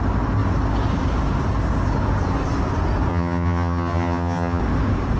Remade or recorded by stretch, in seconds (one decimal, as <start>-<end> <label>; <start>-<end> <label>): 0.0-3.1 recorded; 3.1-4.6 remade; 4.6-5.2 recorded